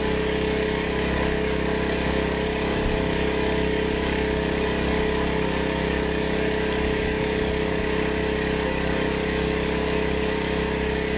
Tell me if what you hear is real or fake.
fake